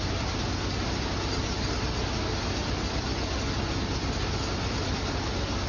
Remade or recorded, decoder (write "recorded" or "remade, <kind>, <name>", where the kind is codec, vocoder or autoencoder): recorded